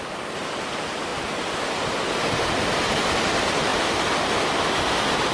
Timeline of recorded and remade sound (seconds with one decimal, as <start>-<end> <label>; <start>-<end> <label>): 0.0-1.1 recorded; 1.1-1.7 remade; 1.7-5.3 recorded